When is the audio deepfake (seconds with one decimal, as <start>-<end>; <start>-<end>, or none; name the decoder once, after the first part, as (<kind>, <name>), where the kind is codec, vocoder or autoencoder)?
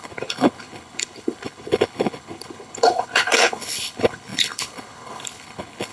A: 0.0-5.9 (codec, HILCodec)